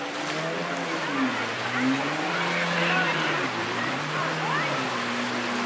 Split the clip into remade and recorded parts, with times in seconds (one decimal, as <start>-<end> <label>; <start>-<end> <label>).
0.0-1.3 recorded; 1.3-4.2 remade; 4.2-5.7 recorded